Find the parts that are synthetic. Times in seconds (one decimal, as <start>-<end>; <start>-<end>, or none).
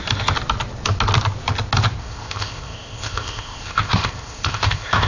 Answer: 2.0-5.1